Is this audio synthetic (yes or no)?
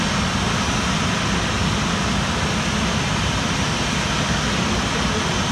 no